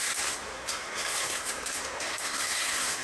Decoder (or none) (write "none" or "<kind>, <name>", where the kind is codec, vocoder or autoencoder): codec, SNAC